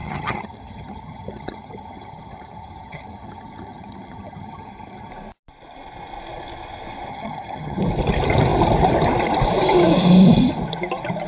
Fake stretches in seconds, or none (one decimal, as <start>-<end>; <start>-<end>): 0.0-5.1; 7.1-7.8